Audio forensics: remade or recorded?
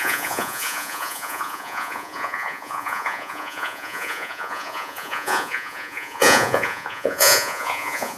remade